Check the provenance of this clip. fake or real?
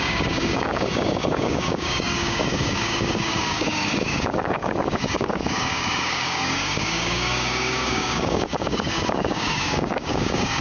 fake